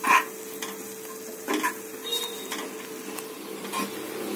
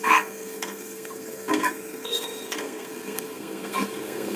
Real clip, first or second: first